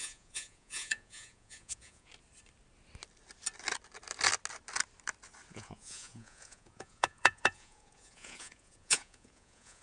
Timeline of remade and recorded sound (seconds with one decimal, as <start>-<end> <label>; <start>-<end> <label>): 0.0-2.1 remade; 2.1-5.5 recorded; 5.5-9.8 remade